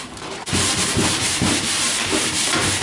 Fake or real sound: fake